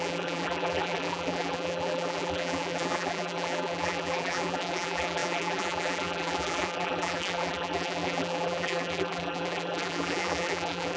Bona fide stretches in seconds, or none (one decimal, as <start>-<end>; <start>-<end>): none